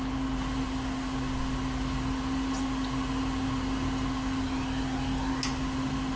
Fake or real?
real